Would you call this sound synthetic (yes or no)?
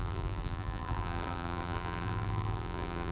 yes